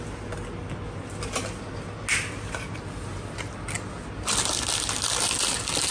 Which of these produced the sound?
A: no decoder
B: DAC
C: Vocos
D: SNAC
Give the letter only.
A